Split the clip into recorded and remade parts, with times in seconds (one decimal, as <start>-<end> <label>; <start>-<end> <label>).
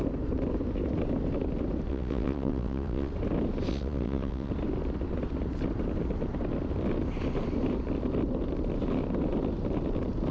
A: 0.0-1.9 recorded; 1.9-3.1 remade; 3.1-3.7 recorded; 3.7-4.5 remade; 4.5-10.3 recorded